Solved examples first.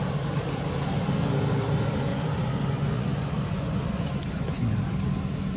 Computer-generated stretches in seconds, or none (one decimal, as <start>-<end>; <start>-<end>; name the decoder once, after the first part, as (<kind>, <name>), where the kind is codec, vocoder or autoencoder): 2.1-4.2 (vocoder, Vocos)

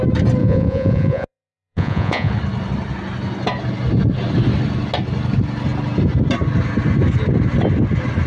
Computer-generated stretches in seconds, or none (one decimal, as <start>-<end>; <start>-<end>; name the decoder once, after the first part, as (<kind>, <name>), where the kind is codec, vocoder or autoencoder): 0.4-2.3 (vocoder, Vocos)

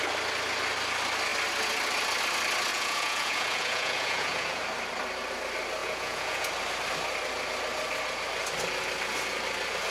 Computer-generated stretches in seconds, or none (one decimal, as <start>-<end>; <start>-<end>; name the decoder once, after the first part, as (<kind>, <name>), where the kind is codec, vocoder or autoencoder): 2.7-4.6 (vocoder, Vocos); 5.8-6.5